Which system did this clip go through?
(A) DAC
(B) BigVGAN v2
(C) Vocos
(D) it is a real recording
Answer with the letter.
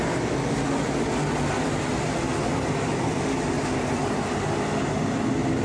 D